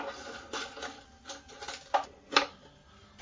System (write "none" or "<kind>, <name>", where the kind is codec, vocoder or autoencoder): none